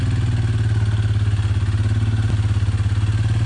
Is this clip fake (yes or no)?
no